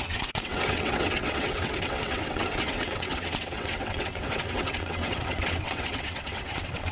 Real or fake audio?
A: fake